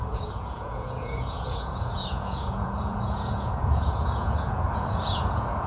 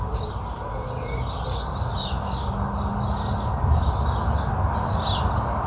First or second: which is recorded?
second